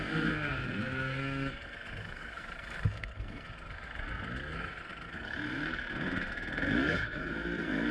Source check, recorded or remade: remade